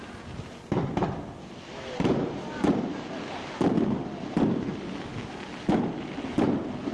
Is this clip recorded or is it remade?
recorded